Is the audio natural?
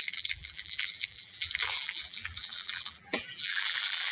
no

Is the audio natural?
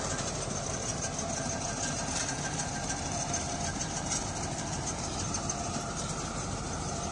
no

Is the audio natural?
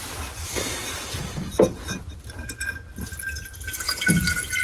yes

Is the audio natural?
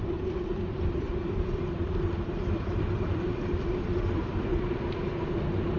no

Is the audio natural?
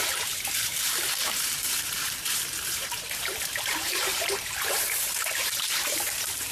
no